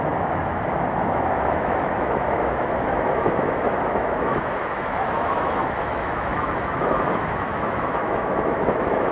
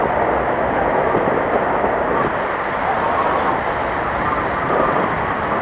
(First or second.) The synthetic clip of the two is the first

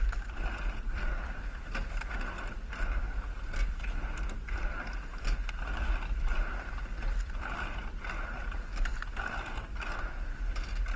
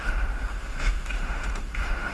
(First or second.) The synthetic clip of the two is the second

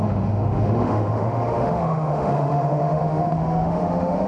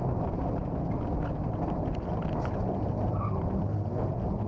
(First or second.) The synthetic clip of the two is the first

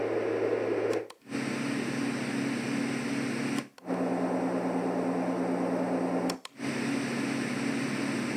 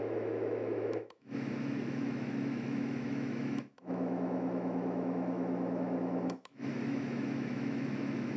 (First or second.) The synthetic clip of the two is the second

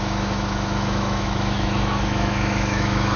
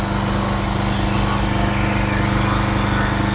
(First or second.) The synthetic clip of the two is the first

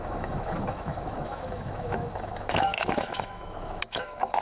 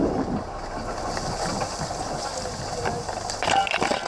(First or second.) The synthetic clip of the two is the first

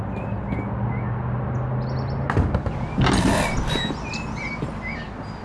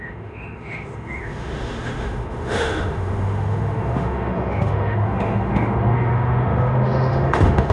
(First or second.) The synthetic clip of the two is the second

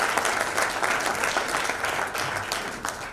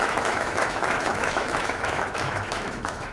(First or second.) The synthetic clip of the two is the second